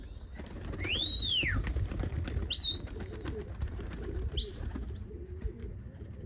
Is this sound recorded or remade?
recorded